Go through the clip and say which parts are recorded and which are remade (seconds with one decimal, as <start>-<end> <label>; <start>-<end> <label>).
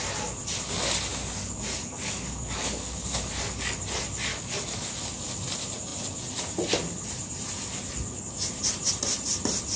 0.0-1.1 recorded; 1.1-3.8 remade; 3.8-4.3 recorded; 4.3-4.9 remade; 4.9-9.8 recorded